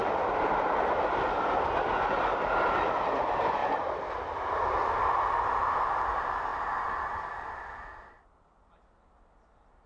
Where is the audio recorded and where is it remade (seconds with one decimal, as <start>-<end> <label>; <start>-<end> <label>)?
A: 0.0-1.5 remade; 1.5-3.6 recorded; 3.6-4.2 remade; 4.2-9.9 recorded